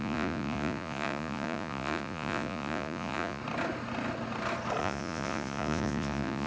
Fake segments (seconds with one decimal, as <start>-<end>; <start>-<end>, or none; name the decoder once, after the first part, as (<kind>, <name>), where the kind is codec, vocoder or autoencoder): 0.0-3.4 (vocoder, Vocos); 4.8-6.5